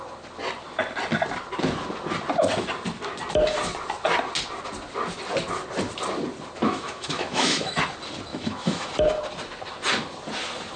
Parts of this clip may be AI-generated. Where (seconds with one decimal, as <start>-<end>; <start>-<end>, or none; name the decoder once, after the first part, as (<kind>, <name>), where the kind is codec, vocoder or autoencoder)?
6.6-7.8 (autoencoder, DAC-VAE); 8.3-8.9